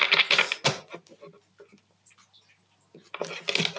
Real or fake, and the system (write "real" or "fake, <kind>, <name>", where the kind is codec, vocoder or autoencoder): real